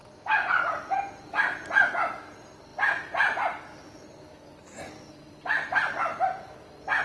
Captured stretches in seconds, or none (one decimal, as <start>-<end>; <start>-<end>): 0.0-7.0